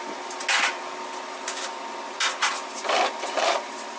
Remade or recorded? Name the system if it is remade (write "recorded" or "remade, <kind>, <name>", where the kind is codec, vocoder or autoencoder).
recorded